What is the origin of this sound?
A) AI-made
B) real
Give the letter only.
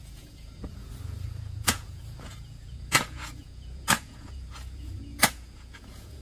A